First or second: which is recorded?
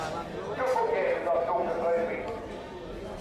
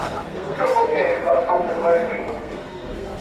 first